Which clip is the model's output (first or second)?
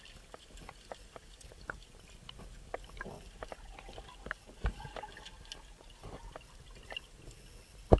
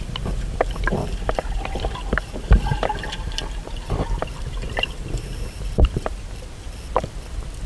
second